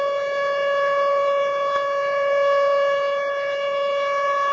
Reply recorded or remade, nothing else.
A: remade